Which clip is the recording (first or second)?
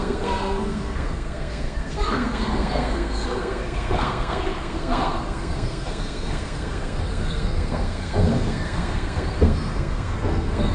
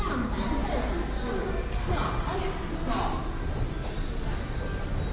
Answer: second